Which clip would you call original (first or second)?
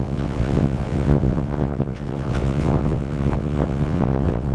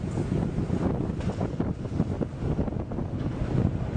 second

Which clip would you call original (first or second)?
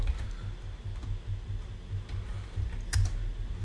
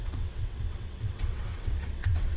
first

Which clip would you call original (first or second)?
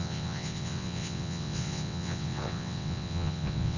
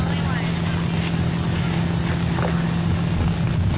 second